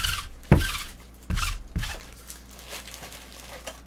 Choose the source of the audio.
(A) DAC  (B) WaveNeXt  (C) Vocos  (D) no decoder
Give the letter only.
D